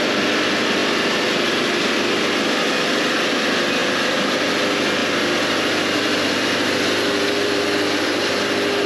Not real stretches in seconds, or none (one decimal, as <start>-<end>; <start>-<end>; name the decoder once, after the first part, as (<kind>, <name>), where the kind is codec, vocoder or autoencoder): 3.8-4.5 (vocoder, BigVGAN v2); 5.0-7.6